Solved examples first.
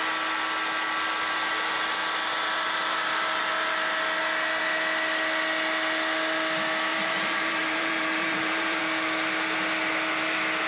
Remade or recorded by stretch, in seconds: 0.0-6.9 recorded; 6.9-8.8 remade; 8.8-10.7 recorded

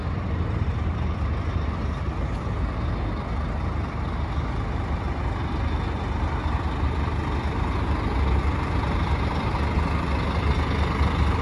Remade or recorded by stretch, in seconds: 0.0-1.2 remade; 1.2-11.4 recorded

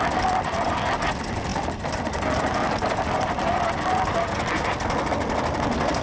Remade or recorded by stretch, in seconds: 0.0-6.0 remade

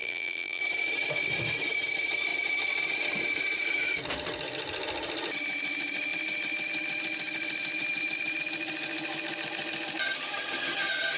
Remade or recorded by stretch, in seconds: 0.0-0.6 remade; 0.6-11.2 recorded

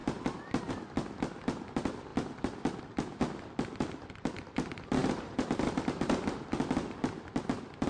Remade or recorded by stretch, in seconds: 0.0-0.7 remade; 0.7-5.0 recorded; 5.0-6.0 remade; 6.0-7.9 recorded

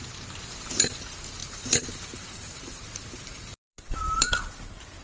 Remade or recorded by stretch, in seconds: 0.0-1.4 recorded; 1.4-4.4 remade; 4.4-5.0 recorded

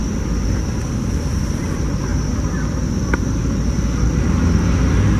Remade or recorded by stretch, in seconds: 0.0-1.6 remade; 1.6-2.1 recorded; 2.1-3.0 remade; 3.0-5.2 recorded